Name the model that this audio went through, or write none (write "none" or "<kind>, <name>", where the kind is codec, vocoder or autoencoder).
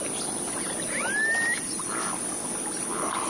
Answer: none